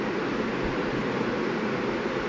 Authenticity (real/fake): real